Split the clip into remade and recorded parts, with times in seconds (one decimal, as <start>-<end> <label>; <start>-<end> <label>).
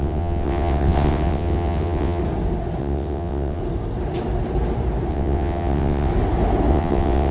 0.0-2.2 remade; 2.2-2.8 recorded; 2.8-3.6 remade; 3.6-5.1 recorded; 5.1-6.1 remade; 6.1-6.7 recorded; 6.7-7.3 remade